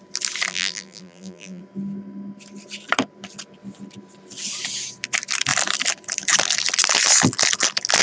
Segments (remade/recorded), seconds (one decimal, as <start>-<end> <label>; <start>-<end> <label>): 0.0-0.5 recorded; 0.5-1.6 remade; 1.6-8.0 recorded